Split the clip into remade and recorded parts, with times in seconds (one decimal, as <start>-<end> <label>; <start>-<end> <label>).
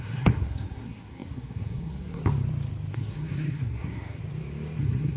0.0-2.2 remade; 2.2-2.9 recorded; 2.9-4.2 remade; 4.2-4.8 recorded; 4.8-5.2 remade